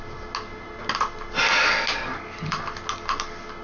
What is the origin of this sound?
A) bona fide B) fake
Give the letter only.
A